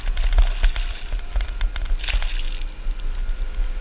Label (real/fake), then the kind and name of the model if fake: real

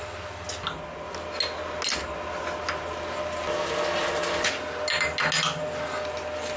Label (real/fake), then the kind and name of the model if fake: real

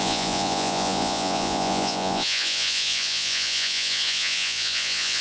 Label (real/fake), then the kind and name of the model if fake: fake, vocoder, Vocos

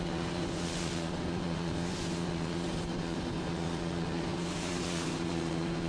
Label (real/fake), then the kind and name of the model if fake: fake, vocoder, Vocos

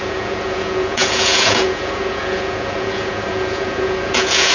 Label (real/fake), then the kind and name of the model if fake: fake, vocoder, Vocos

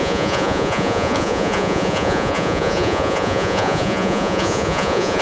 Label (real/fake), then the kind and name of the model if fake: fake, vocoder, Vocos